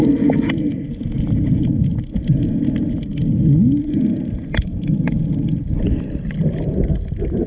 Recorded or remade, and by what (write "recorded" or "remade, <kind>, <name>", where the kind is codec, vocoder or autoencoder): recorded